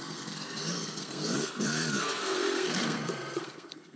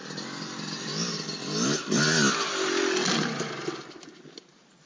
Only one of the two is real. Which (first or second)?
second